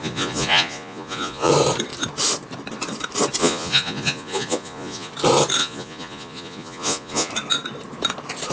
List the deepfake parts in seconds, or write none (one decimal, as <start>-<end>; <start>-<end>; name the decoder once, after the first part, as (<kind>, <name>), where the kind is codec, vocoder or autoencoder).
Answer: 0.0-1.5 (vocoder, Vocos); 3.4-5.1; 5.6-7.3